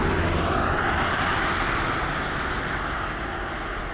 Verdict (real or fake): real